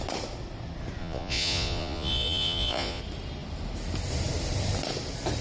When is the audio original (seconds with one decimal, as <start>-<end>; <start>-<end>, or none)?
0.0-1.0; 3.0-5.4